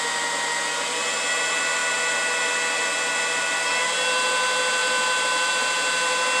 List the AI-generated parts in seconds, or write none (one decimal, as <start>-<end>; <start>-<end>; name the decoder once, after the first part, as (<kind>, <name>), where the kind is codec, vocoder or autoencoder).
none

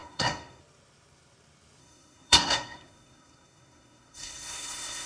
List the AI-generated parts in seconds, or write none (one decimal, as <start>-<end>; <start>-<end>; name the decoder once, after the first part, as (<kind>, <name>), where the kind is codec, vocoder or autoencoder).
0.0-0.6 (codec, SNAC); 1.8-5.1

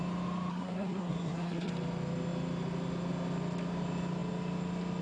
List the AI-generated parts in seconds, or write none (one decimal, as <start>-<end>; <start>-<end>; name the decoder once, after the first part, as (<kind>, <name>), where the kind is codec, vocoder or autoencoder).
0.5-1.7 (codec, SNAC)